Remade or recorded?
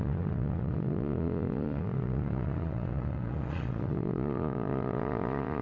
remade